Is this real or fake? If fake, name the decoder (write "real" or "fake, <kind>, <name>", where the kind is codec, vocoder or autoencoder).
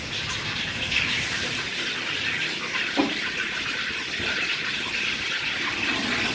fake, vocoder, BigVGAN v2